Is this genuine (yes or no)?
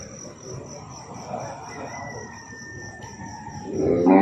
yes